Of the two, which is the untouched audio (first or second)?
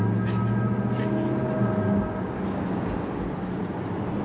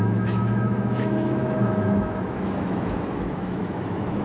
first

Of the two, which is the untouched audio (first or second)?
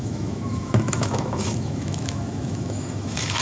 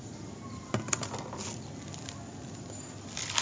second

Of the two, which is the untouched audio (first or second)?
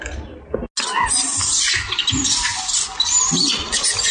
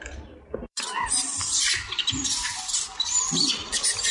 first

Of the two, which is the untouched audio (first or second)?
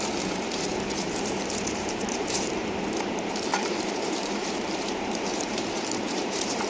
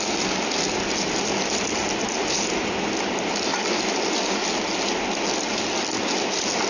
second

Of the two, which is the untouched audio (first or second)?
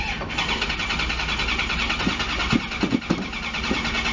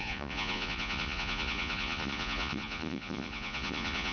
first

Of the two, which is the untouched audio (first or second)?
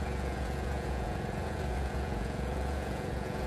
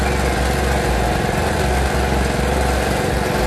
second